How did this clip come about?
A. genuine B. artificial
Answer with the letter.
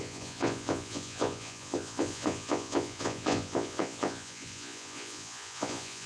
B